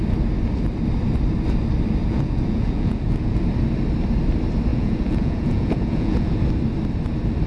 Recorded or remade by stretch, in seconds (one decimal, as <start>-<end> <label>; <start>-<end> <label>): 0.0-2.0 recorded; 2.0-3.4 remade; 3.4-4.7 recorded; 4.7-6.4 remade; 6.4-7.5 recorded